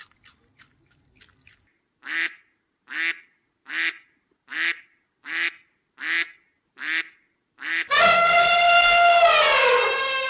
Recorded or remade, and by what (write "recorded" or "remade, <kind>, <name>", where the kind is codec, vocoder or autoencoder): recorded